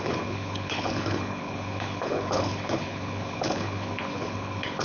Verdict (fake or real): fake